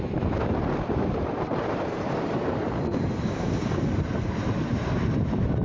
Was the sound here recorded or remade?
remade